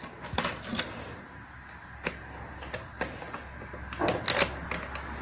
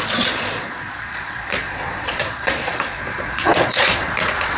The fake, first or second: second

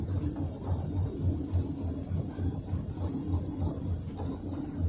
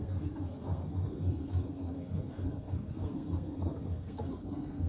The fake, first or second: second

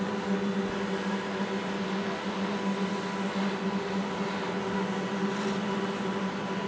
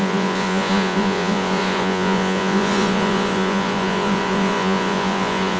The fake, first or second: second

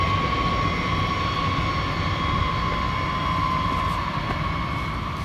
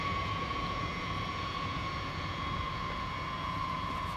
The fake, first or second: second